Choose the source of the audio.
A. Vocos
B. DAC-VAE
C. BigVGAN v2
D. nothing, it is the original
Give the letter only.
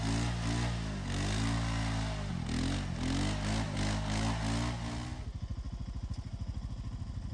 D